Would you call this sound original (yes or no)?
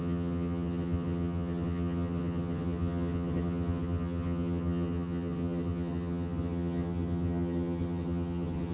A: no